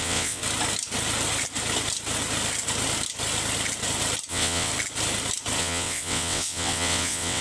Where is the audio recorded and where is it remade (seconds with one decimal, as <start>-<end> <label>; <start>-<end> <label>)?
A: 0.0-0.4 remade; 0.4-4.3 recorded; 4.3-4.7 remade; 4.7-5.6 recorded; 5.6-7.4 remade